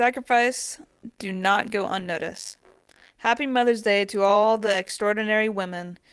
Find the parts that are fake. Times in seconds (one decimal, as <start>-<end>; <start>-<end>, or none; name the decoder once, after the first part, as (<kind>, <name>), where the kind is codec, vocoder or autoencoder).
0.9-3.1 (vocoder, BigVGAN v2); 4.3-4.9